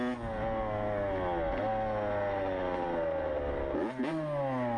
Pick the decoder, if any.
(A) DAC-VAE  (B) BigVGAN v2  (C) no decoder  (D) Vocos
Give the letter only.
C